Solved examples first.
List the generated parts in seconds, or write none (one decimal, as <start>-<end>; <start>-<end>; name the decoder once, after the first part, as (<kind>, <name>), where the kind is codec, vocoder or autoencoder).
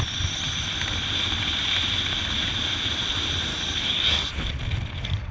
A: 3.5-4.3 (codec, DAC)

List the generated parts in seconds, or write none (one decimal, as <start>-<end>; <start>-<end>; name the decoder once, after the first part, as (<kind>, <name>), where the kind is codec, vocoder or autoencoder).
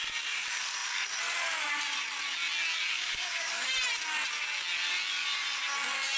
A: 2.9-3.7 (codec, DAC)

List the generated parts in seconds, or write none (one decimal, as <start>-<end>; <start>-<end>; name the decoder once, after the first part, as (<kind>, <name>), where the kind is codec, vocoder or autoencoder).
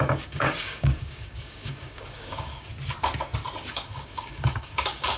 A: 0.0-2.7 (codec, DAC); 3.7-5.2